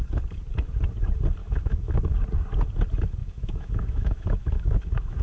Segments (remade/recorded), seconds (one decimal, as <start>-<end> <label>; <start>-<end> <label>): 0.0-1.4 recorded; 1.4-2.0 remade; 2.0-3.2 recorded; 3.2-5.2 remade